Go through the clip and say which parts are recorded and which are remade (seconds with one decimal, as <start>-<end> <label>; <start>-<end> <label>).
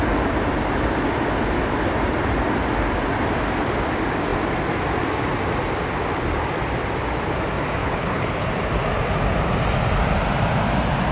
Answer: 0.0-7.8 recorded; 7.8-8.5 remade; 8.5-11.1 recorded